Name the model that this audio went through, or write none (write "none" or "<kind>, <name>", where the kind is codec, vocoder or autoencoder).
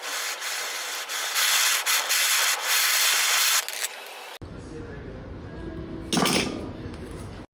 none